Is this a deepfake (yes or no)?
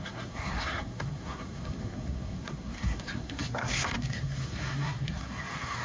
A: yes